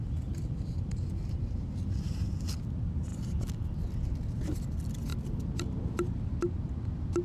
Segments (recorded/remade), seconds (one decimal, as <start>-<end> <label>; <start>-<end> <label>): 0.0-2.3 remade; 2.3-7.2 recorded